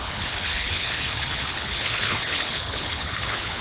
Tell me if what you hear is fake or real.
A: fake